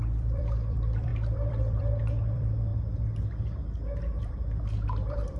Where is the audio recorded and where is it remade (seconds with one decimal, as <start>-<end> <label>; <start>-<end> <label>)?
0.0-2.7 remade; 2.7-4.2 recorded; 4.2-5.4 remade